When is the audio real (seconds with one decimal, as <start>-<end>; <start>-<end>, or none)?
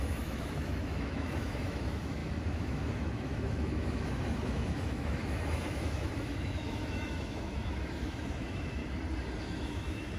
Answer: 8.8-9.4